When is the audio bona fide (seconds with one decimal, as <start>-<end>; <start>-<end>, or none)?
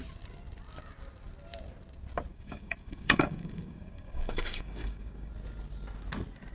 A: 0.0-2.3; 5.3-6.5